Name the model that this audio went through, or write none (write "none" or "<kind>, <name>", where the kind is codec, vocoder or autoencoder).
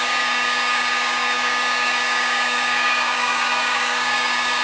codec, DAC